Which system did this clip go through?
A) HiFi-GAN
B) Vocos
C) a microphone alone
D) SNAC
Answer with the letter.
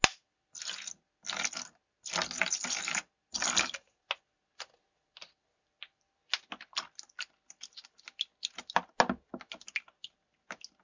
C